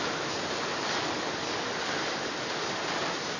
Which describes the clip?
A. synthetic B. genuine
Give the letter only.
A